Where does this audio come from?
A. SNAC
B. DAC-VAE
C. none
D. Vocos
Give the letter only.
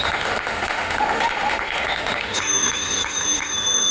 B